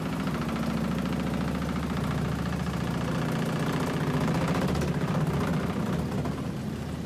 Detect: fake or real real